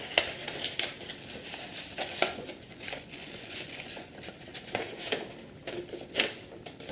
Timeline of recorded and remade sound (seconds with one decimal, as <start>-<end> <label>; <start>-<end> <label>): 0.0-2.0 recorded; 2.0-4.1 remade; 4.1-4.5 recorded; 4.5-5.1 remade; 5.1-6.9 recorded